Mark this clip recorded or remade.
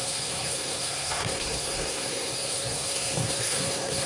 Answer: remade